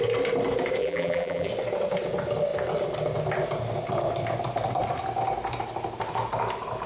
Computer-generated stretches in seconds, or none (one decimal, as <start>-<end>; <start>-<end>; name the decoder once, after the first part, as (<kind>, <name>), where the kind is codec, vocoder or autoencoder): 0.8-1.5 (vocoder, BigVGAN v2)